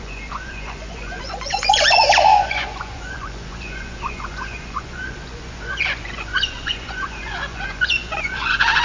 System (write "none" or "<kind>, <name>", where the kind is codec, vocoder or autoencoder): vocoder, Vocos